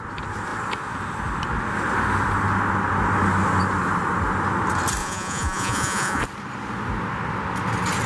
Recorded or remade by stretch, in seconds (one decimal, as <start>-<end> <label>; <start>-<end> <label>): 0.0-5.0 recorded; 5.0-6.2 remade; 6.2-8.1 recorded